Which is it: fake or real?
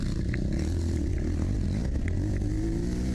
real